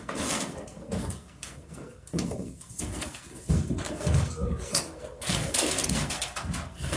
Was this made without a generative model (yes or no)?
no